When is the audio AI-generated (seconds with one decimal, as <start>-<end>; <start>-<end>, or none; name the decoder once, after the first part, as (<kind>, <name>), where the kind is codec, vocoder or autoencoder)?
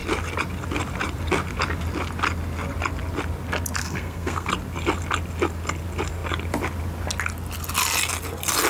3.8-4.5 (codec, SNAC)